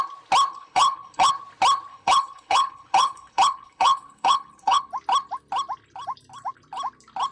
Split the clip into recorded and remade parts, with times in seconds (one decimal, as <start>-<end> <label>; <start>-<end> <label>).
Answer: 0.0-0.5 recorded; 0.5-1.3 remade; 1.3-1.9 recorded; 1.9-4.9 remade; 4.9-7.3 recorded